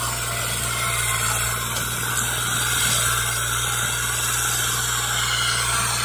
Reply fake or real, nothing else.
real